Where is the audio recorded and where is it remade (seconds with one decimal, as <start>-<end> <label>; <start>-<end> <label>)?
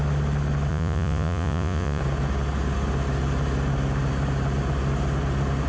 0.0-0.7 recorded; 0.7-2.0 remade; 2.0-5.7 recorded